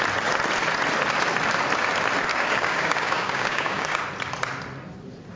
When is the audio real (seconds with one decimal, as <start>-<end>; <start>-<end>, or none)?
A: 0.0-2.3; 4.0-5.4